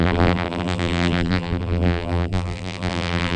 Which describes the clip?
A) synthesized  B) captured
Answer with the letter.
A